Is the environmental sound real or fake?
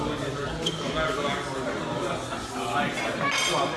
real